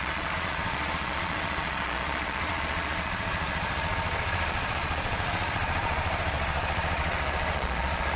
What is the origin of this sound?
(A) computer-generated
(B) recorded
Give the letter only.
A